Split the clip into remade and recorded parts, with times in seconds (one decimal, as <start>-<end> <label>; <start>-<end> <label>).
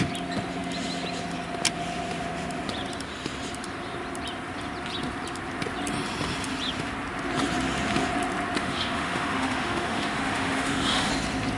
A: 0.0-8.6 recorded; 8.6-11.1 remade; 11.1-11.6 recorded